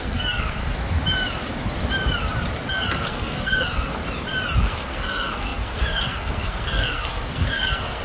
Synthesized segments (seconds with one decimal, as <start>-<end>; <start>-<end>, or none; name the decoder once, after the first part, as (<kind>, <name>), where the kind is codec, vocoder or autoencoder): 0.0-0.6 (codec, SNAC); 2.7-4.0; 4.6-8.0